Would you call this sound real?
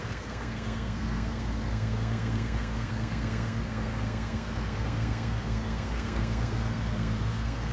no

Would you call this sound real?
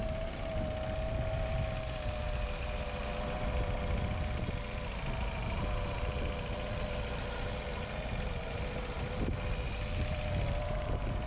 yes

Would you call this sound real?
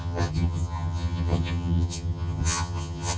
no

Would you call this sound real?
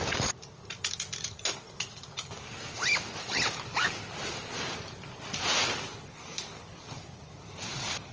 yes